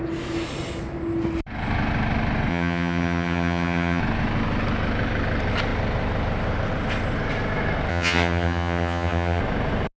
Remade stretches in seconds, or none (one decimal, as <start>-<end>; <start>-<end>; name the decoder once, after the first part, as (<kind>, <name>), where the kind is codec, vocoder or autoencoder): 2.5-4.0 (vocoder, HiFi-GAN); 7.9-9.4